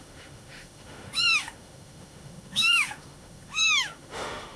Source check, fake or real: fake